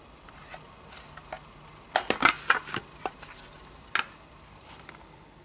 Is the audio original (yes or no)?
yes